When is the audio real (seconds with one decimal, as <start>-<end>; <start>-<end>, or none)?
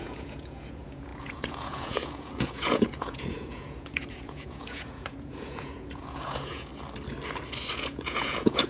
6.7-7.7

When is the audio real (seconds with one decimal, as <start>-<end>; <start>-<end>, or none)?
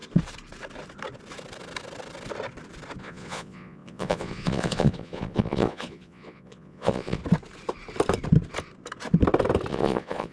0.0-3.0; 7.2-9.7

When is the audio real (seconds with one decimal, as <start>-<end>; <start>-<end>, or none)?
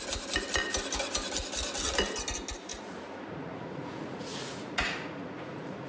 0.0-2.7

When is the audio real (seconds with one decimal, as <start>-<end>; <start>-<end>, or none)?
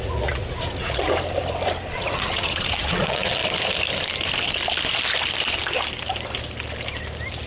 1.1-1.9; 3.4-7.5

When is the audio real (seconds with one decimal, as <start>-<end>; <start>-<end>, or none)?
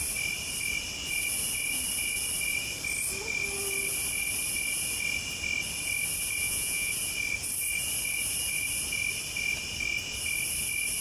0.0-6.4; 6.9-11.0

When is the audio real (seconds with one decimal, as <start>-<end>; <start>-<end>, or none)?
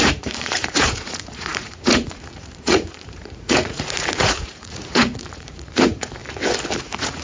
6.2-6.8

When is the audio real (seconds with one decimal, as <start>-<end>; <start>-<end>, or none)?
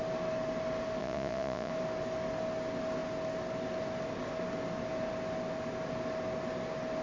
0.0-1.0; 1.7-7.0